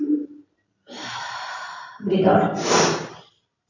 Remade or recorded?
remade